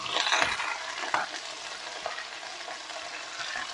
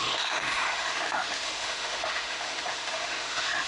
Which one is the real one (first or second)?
first